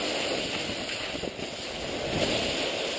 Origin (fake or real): real